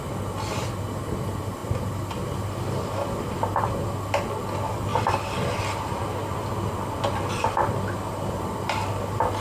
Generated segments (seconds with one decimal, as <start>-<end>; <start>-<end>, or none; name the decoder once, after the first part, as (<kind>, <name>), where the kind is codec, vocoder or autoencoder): none